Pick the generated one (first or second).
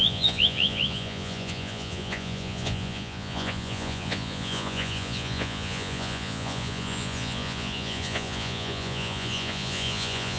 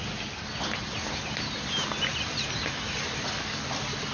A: first